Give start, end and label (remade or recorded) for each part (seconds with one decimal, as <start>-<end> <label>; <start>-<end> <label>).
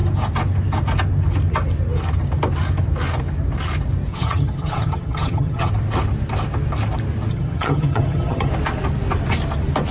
0.0-4.1 recorded; 4.1-5.7 remade; 5.7-7.3 recorded; 7.3-8.5 remade; 8.5-9.9 recorded